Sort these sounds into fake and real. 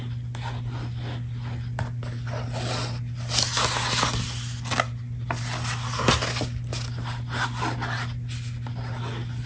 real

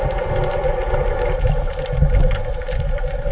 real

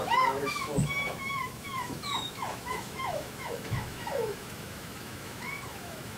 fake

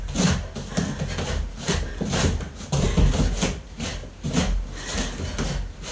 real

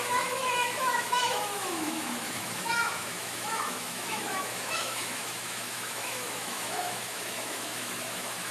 fake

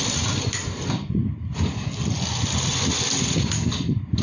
real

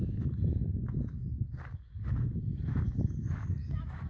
fake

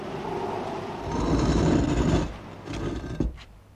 real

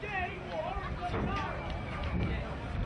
real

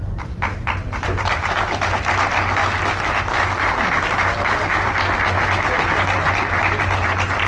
real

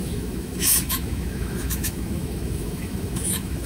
fake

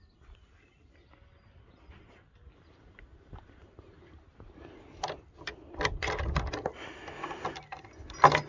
real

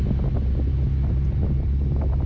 real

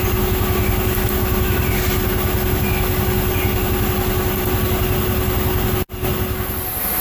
real